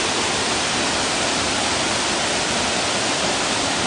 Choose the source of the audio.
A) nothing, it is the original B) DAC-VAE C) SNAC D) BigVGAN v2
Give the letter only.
A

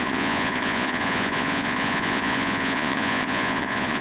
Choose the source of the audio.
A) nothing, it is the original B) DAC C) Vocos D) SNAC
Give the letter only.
C